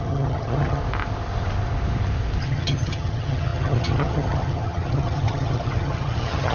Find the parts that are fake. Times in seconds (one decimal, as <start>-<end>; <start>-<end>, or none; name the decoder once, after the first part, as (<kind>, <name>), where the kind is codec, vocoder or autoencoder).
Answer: 0.0-0.8 (vocoder, HiFi-GAN); 2.4-6.5